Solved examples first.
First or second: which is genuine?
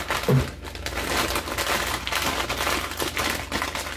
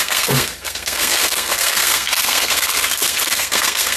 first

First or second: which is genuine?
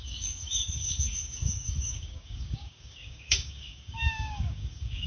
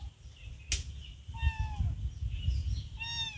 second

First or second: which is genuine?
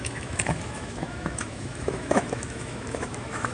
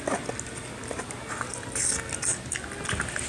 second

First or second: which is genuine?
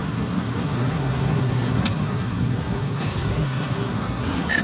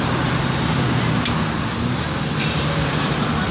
second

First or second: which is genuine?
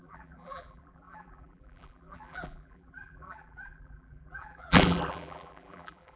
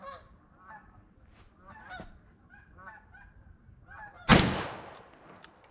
second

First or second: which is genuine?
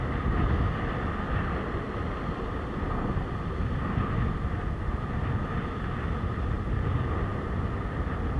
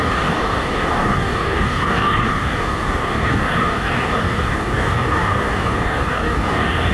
first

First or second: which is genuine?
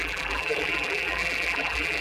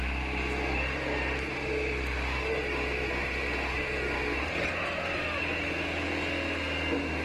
second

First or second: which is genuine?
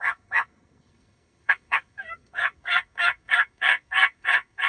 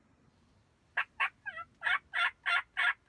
second